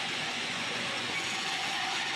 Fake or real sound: fake